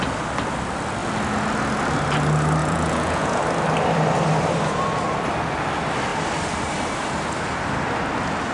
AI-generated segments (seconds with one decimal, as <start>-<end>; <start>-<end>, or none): 2.6-3.4